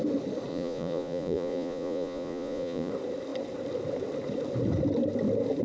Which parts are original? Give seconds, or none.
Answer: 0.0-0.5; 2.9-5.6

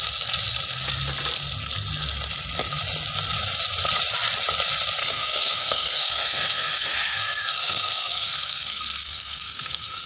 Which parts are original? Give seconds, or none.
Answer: 0.0-5.0

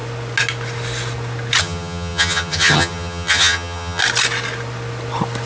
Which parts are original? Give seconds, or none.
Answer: 0.0-1.6; 4.0-5.5

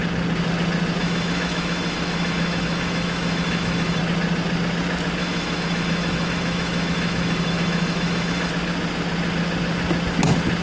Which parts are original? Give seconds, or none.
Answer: 0.0-1.0; 4.0-5.2; 8.5-10.6

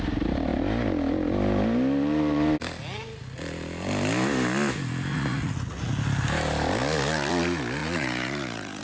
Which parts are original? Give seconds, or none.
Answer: 0.0-5.1; 5.9-7.8

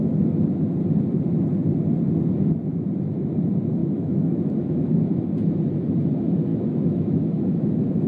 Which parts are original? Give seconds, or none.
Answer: 0.0-3.8; 5.2-6.5